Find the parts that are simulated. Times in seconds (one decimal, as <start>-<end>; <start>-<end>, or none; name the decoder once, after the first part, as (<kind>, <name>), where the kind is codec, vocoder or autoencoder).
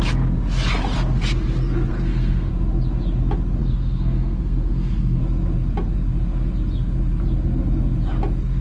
1.9-2.5 (codec, SNAC); 3.6-5.2